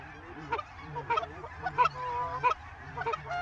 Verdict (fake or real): fake